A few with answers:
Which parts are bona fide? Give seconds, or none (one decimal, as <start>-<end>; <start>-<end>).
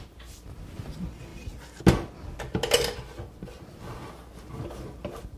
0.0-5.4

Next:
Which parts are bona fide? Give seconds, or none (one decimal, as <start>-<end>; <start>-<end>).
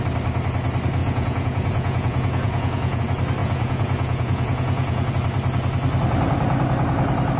0.0-1.0; 3.0-3.4; 5.1-7.4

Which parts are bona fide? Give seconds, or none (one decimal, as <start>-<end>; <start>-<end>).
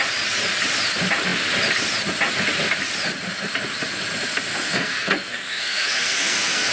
0.0-4.5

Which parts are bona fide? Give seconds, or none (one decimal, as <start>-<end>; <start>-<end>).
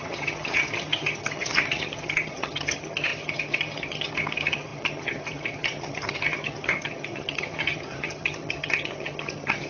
none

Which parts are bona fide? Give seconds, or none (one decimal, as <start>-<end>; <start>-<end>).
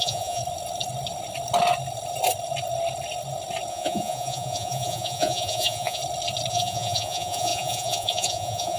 0.4-3.7; 6.0-6.5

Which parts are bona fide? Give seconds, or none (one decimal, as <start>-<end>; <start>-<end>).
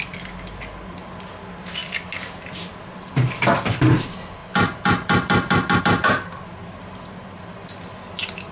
0.0-8.5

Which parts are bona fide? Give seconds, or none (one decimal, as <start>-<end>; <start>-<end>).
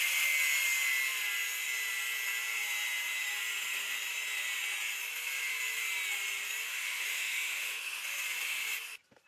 0.0-6.7; 8.0-9.3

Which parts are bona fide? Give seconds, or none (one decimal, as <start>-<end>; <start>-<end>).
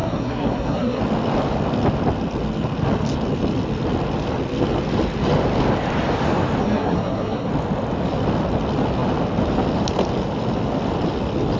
1.0-6.6; 7.5-11.6